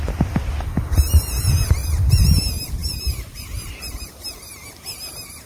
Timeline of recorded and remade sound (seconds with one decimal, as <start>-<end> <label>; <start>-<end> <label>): 0.0-1.8 recorded; 1.8-2.4 remade; 2.4-2.8 recorded; 2.8-4.9 remade; 4.9-5.5 recorded